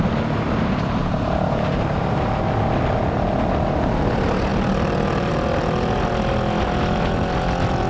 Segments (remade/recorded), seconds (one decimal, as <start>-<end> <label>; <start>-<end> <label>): 0.0-7.9 recorded